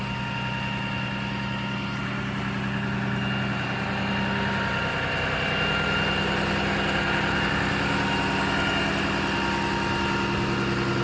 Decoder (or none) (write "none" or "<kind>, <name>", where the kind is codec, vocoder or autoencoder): none